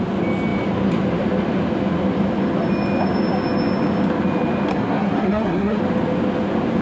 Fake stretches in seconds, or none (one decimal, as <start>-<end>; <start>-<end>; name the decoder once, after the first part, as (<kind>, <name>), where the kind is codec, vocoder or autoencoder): 4.7-5.8 (codec, SNAC)